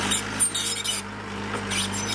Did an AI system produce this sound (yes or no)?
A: no